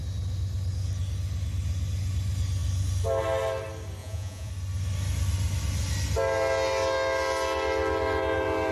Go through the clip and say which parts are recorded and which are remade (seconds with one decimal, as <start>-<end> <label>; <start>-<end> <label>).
0.0-4.0 recorded; 4.0-4.5 remade; 4.5-8.7 recorded

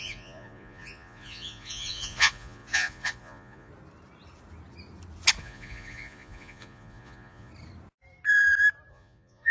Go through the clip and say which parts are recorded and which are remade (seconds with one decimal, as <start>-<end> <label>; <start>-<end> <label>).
0.0-3.7 remade; 3.7-5.4 recorded; 5.4-7.5 remade; 7.5-8.9 recorded; 8.9-9.5 remade

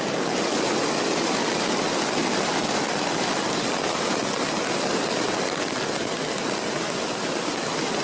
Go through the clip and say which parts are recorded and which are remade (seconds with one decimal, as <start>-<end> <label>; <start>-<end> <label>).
0.0-8.0 recorded

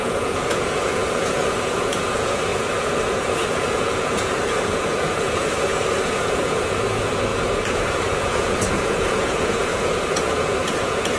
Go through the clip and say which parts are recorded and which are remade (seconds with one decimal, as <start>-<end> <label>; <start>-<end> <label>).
0.0-11.2 remade

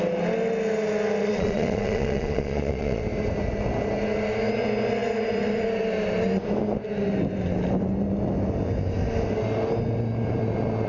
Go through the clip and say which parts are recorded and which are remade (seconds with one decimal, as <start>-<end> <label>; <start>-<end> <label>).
0.0-1.2 recorded; 1.2-3.0 remade; 3.0-10.9 recorded

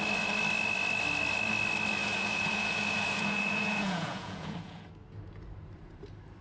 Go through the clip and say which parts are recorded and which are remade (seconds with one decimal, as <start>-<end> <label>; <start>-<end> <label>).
0.0-2.0 recorded; 2.0-4.9 remade; 4.9-6.4 recorded